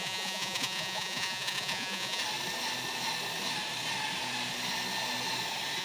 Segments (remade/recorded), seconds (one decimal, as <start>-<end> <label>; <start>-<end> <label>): 0.0-2.2 remade; 2.2-5.8 recorded